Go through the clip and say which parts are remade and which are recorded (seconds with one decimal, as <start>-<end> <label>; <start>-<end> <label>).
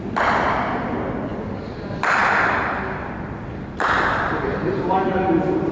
0.0-4.5 recorded; 4.5-5.7 remade